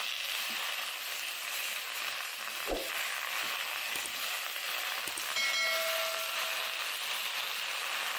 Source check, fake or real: real